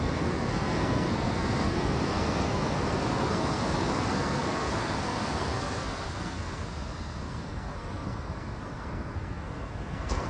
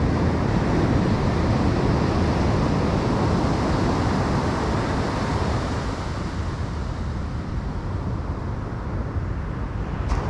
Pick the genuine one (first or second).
second